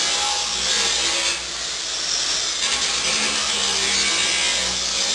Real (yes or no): yes